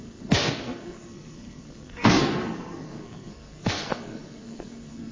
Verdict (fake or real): fake